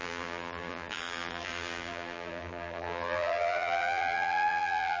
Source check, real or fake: fake